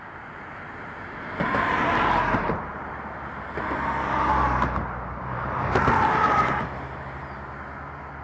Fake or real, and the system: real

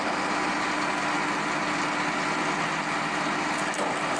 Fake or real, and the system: real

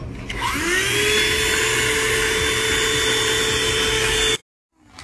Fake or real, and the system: real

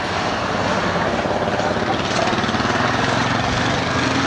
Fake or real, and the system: real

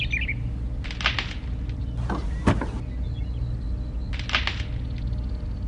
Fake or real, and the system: real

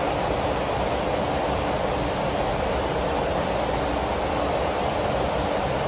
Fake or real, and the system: real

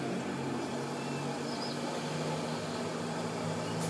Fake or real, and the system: real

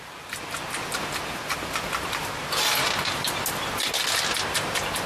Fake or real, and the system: real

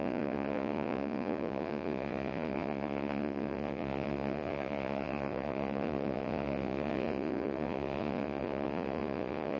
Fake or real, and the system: fake, vocoder, Vocos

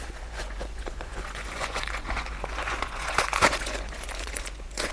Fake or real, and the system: fake, vocoder, Vocos